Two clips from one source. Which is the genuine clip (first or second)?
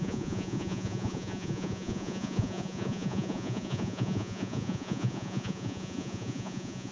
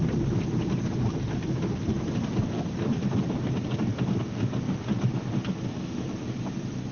second